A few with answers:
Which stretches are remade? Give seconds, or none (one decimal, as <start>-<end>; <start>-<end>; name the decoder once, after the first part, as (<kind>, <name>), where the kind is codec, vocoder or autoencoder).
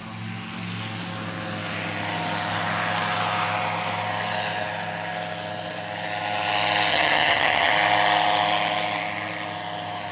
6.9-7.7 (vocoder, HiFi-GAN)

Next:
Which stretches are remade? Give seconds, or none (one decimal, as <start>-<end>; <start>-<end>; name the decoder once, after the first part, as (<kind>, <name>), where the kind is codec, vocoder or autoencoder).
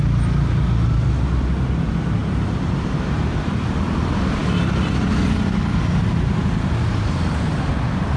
2.2-3.5 (vocoder, BigVGAN v2); 6.9-7.7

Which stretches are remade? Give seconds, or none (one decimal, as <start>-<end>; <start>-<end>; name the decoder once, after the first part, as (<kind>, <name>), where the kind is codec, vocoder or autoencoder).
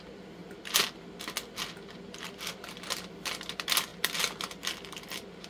none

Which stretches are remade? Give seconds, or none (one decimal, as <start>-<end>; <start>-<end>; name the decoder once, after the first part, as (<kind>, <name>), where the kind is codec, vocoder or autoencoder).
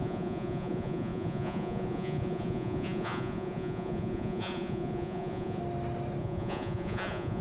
0.0-5.6 (vocoder, Vocos); 6.2-7.4